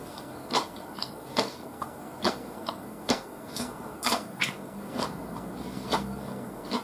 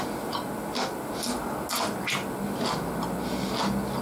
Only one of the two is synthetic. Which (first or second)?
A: first